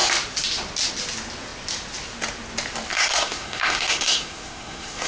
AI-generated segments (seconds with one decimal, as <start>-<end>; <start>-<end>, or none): 2.9-5.1